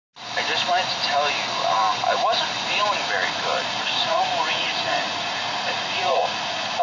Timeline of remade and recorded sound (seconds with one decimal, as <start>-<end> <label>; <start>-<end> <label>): 0.0-3.8 recorded; 3.8-6.8 remade